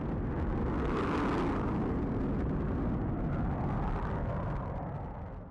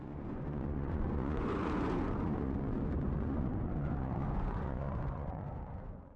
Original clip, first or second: first